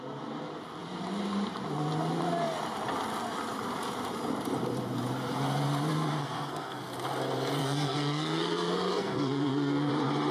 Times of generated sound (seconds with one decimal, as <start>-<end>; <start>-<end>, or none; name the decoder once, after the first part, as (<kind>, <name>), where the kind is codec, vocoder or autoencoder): 6.2-6.8 (codec, SNAC); 7.6-9.9